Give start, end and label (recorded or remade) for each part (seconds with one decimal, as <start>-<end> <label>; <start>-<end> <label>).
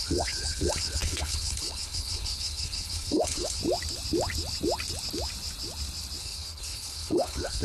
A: 0.0-3.6 remade; 3.6-6.2 recorded; 6.2-7.6 remade